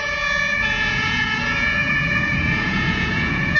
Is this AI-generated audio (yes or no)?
yes